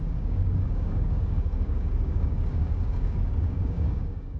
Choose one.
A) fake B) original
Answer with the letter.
A